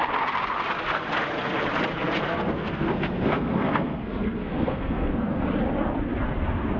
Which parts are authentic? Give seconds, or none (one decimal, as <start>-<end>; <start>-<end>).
0.0-2.3; 5.4-6.8